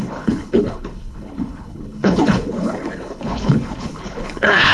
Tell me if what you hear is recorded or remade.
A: remade